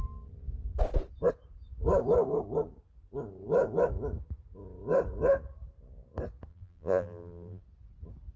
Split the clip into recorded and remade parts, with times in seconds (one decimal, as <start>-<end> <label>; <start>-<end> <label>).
0.0-6.5 recorded; 6.5-7.6 remade; 7.6-8.4 recorded